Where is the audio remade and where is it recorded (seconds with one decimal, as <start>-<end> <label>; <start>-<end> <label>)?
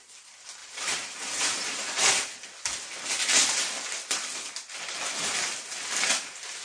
0.0-0.6 recorded; 0.6-1.4 remade; 1.4-6.6 recorded